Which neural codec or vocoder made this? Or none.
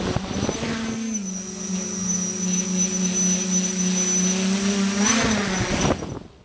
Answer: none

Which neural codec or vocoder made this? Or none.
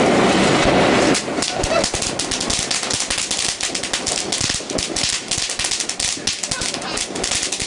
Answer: none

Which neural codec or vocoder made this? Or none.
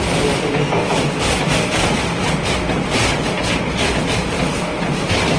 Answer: none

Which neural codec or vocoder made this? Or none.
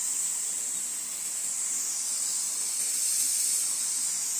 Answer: none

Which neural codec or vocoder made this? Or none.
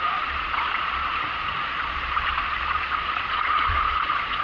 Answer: vocoder, Vocos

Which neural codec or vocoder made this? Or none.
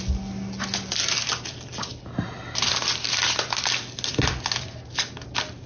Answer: none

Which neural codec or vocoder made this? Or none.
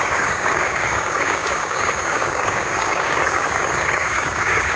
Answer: codec, DAC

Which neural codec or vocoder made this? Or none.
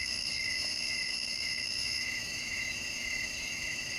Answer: autoencoder, DAC-VAE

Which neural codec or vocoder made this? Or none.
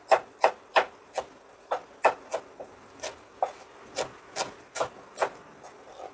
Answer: none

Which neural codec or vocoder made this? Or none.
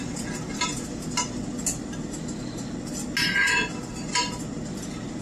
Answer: none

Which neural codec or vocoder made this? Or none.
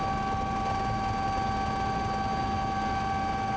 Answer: none